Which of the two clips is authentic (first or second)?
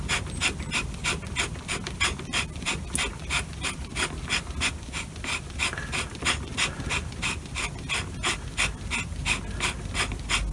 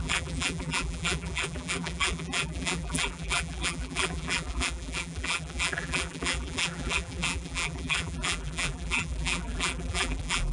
first